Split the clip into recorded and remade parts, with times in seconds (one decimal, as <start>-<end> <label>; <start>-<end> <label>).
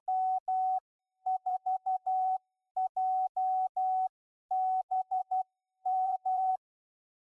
0.0-1.0 recorded; 1.0-2.7 remade; 2.7-4.9 recorded; 4.9-6.5 remade; 6.5-7.3 recorded